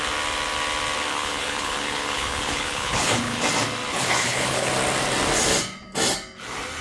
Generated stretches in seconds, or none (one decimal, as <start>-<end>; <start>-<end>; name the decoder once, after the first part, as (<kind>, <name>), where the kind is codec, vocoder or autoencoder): 1.1-3.4 (codec, HILCodec); 3.9-4.7